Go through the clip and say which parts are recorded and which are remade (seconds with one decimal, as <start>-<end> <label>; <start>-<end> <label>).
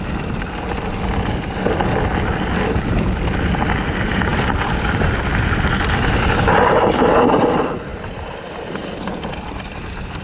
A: 0.0-4.3 recorded; 4.3-6.7 remade; 6.7-7.9 recorded; 7.9-10.2 remade